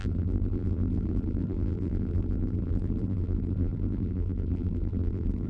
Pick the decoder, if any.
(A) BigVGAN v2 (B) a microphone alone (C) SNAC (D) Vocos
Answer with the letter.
A